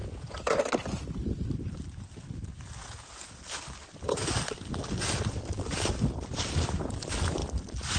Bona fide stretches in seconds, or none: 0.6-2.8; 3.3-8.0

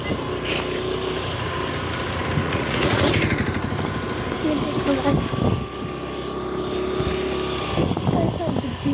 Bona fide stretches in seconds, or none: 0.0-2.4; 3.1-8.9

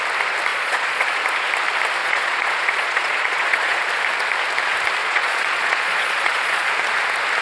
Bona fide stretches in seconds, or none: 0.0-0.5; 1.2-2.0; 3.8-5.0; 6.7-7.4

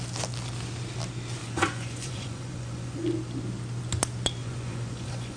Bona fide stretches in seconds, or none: 0.0-1.4; 3.0-4.4

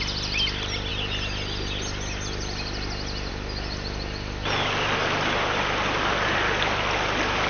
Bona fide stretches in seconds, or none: 0.0-7.5

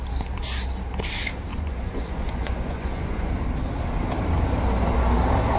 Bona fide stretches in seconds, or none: 0.0-1.5; 3.3-5.6